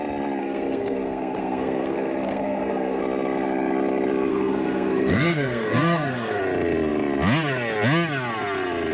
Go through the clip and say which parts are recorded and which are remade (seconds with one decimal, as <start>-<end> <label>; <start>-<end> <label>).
0.0-0.4 recorded; 0.4-3.0 remade; 3.0-4.3 recorded; 4.3-6.4 remade; 6.4-8.9 recorded

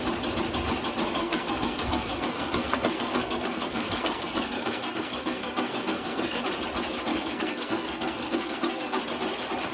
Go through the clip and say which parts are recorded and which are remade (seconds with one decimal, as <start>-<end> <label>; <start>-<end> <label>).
0.0-1.2 recorded; 1.2-6.4 remade; 6.4-7.1 recorded; 7.1-9.0 remade; 9.0-9.7 recorded

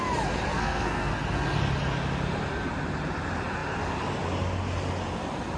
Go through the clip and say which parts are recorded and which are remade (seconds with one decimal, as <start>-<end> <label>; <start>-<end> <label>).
0.0-0.5 recorded; 0.5-1.1 remade; 1.1-5.6 recorded

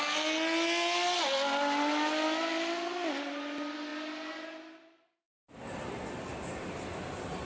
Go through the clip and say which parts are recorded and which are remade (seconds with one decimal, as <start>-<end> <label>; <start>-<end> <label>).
0.0-7.4 recorded

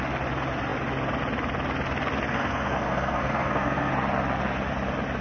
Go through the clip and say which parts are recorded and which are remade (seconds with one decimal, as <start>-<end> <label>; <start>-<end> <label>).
0.0-2.3 recorded; 2.3-3.9 remade; 3.9-5.2 recorded

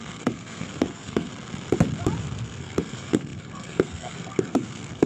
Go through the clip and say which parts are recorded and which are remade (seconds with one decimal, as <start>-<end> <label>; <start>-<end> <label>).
0.0-1.3 remade; 1.3-2.2 recorded; 2.2-5.1 remade

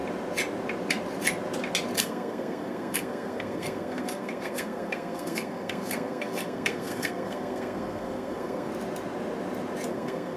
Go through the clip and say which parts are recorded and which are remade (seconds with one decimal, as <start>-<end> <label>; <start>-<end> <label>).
0.0-2.0 recorded; 2.0-8.7 remade; 8.7-9.9 recorded; 9.9-10.4 remade

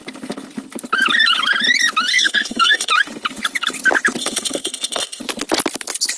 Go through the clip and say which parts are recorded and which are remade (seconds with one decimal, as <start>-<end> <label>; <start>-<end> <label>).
0.0-2.1 recorded; 2.1-2.9 remade; 2.9-4.2 recorded; 4.2-5.2 remade; 5.2-6.2 recorded